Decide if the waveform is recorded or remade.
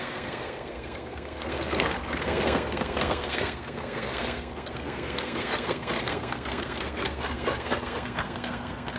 remade